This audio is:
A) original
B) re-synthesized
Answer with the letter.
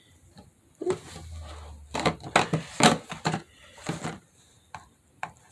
A